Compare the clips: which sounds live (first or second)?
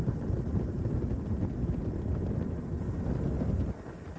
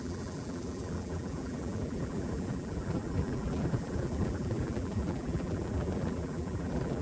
first